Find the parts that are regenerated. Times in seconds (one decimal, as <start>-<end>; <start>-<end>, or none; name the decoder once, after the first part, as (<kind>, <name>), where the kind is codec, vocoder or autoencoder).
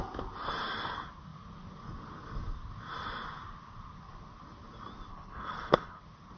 5.1-6.0 (codec, HILCodec)